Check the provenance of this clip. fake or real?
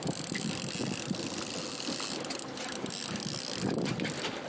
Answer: real